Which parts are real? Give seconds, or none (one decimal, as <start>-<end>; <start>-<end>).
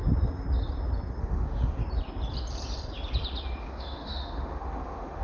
0.0-1.2; 1.8-3.6